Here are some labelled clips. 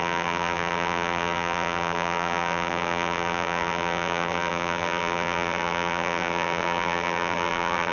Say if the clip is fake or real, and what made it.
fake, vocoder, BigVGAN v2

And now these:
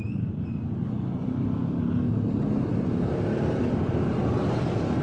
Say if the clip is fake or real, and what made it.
real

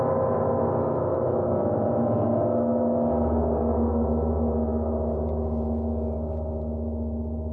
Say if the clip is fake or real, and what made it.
real